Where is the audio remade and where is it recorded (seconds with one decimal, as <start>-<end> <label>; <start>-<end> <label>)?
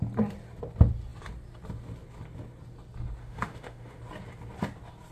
0.0-3.2 recorded; 3.2-4.0 remade; 4.0-5.1 recorded